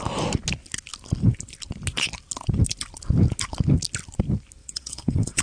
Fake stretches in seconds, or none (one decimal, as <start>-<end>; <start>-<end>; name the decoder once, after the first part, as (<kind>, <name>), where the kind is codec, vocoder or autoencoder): 4.6-5.4 (vocoder, WaveNeXt)